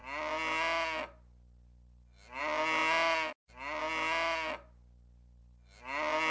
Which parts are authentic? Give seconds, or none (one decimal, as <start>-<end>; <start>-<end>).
0.0-6.3